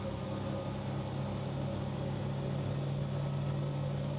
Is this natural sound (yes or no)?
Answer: yes